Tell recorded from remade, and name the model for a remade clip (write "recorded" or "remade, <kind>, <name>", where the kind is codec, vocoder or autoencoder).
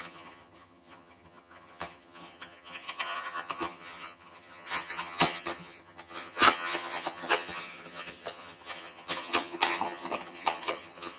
remade, vocoder, HiFi-GAN